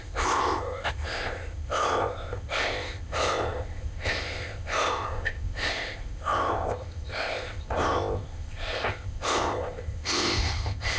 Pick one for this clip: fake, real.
fake